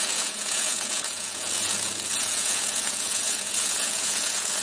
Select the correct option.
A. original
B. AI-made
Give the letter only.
B